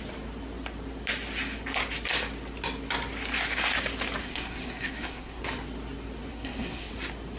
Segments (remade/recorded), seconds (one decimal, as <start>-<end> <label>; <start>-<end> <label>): 0.0-4.2 recorded; 4.2-5.4 remade; 5.4-6.3 recorded; 6.3-6.9 remade; 6.9-7.4 recorded